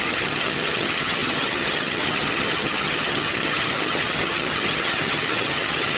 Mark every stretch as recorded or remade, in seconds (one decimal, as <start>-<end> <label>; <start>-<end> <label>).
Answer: 0.0-6.0 remade